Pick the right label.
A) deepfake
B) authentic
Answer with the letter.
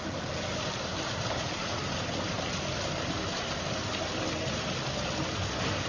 B